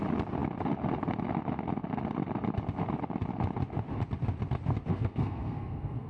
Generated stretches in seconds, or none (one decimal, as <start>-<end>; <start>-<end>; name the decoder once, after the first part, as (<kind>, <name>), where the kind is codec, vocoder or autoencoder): 4.9-6.1 (codec, SNAC)